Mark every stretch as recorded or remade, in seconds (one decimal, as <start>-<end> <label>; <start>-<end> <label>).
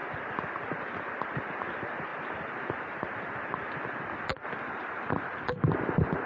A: 0.0-4.8 recorded; 4.8-5.4 remade; 5.4-6.3 recorded